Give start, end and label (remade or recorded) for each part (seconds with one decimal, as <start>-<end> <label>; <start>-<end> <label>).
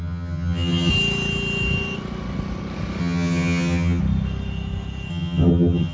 0.0-0.9 remade; 0.9-3.0 recorded; 3.0-4.0 remade; 4.0-5.1 recorded; 5.1-5.9 remade